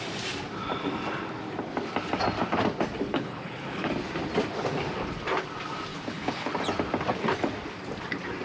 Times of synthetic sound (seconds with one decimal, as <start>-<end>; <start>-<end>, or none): 3.1-3.9; 5.9-6.5